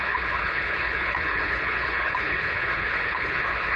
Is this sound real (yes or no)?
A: no